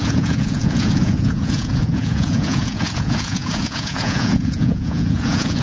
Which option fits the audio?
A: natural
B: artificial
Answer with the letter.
B